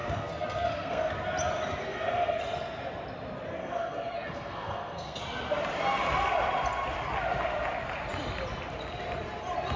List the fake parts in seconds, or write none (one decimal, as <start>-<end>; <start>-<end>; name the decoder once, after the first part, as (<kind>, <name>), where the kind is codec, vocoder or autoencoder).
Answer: 0.0-1.1 (codec, SNAC); 1.8-2.4; 3.6-5.2